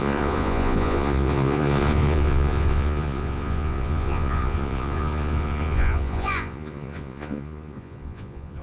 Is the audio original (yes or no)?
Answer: no